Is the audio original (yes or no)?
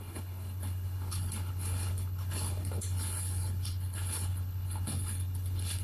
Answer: no